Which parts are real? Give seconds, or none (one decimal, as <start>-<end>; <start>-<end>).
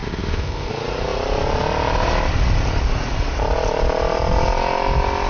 0.7-5.3